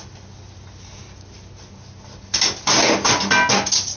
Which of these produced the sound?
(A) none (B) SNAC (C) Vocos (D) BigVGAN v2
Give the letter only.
A